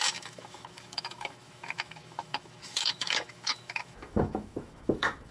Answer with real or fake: fake